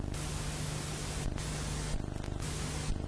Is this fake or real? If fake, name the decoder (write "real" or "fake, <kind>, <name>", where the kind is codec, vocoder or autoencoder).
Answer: real